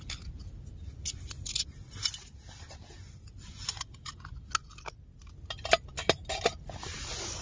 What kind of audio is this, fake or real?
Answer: real